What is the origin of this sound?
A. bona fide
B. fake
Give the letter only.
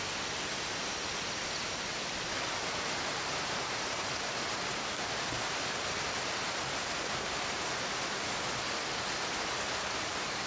A